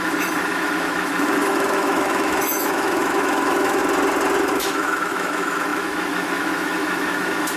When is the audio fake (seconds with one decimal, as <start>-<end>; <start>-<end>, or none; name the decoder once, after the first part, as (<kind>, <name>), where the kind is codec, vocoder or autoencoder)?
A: 0.0-3.8 (autoencoder, DAC-VAE); 4.5-7.6